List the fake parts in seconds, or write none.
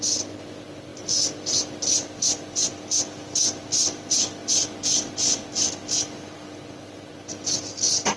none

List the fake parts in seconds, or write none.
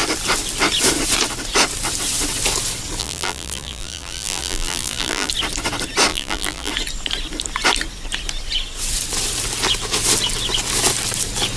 3.0-5.3 (vocoder, BigVGAN v2); 6.1-6.7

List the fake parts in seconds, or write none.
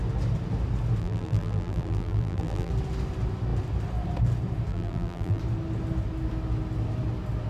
1.0-2.7 (vocoder, BigVGAN v2); 4.7-5.4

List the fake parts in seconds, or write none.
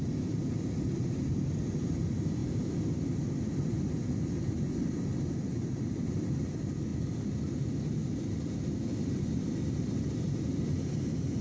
0.0-6.9 (vocoder, BigVGAN v2); 7.5-11.4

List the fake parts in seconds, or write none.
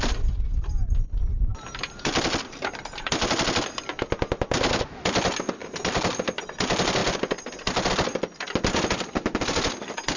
1.3-3.1 (vocoder, BigVGAN v2); 5.6-6.4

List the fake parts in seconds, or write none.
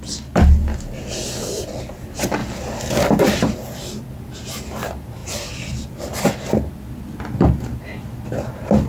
5.2-6.7 (vocoder, BigVGAN v2)